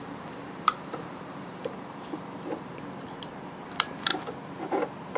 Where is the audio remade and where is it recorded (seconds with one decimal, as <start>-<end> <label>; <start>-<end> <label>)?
0.0-4.1 remade; 4.1-5.2 recorded